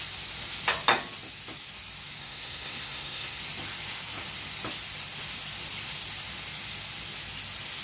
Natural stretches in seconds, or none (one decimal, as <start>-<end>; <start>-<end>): 0.0-2.2; 3.4-7.8